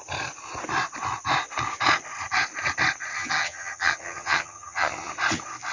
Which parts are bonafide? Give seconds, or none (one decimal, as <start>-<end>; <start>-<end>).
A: 0.0-3.1; 5.1-5.7